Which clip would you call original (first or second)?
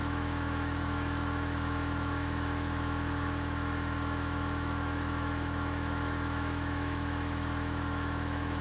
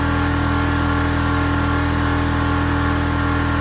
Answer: second